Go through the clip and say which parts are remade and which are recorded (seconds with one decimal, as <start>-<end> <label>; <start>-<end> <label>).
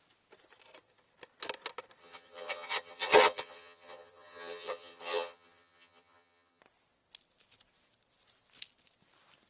0.0-2.0 recorded; 2.0-6.6 remade; 6.6-9.5 recorded